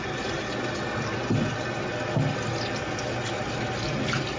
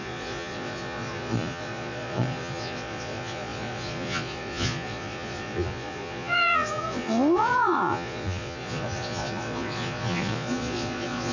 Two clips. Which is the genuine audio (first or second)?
first